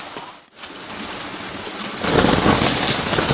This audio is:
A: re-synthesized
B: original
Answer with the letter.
B